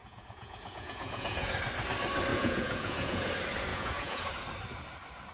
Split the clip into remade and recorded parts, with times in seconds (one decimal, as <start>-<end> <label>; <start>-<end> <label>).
0.0-1.5 remade; 1.5-2.3 recorded; 2.3-3.3 remade; 3.3-3.7 recorded; 3.7-4.3 remade; 4.3-5.3 recorded